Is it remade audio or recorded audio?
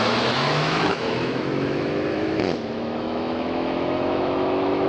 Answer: remade